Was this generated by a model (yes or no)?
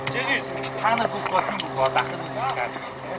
no